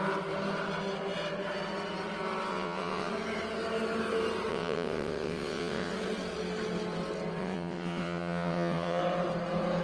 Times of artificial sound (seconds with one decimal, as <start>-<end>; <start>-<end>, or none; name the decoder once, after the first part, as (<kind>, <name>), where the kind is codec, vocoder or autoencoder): 2.5-3.1 (vocoder, WaveNeXt); 4.5-5.9; 7.4-9.0